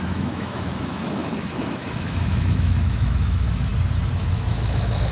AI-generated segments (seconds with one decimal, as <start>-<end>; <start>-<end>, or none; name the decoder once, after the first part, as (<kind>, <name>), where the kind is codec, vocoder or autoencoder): 0.0-3.7 (autoencoder, DAC-VAE); 4.2-5.1